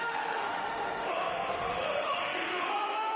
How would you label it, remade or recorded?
remade